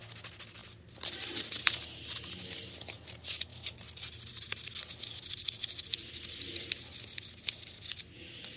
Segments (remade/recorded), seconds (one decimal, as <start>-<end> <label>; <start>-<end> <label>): 0.0-3.5 recorded; 3.5-4.7 remade; 4.7-8.6 recorded